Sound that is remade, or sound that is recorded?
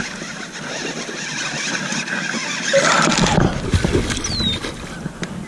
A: recorded